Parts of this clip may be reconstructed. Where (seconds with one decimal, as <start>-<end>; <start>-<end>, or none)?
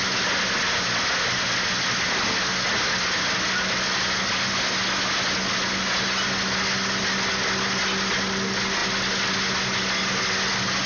none